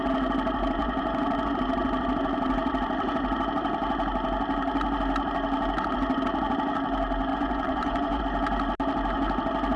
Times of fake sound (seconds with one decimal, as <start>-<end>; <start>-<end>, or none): 0.8-1.6; 7.3-8.2